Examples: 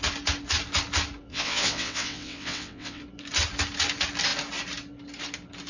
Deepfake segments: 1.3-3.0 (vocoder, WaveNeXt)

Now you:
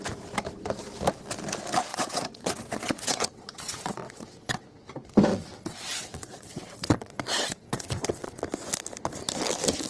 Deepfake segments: 1.9-4.6 (vocoder, WaveNeXt); 5.3-8.4